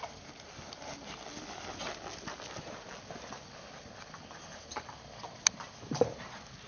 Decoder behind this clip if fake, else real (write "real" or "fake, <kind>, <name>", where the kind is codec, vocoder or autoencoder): real